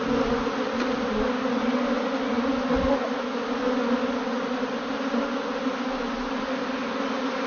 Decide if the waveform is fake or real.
real